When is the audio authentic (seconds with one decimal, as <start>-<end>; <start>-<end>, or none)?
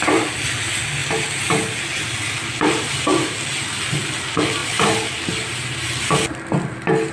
0.0-7.1